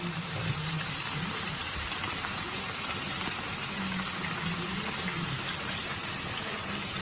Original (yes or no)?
no